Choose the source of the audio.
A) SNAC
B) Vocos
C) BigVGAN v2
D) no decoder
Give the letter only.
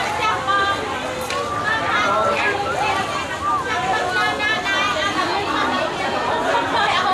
D